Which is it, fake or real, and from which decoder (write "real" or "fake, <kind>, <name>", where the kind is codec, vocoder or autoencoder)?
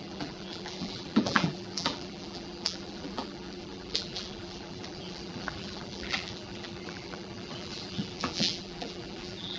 fake, vocoder, BigVGAN v2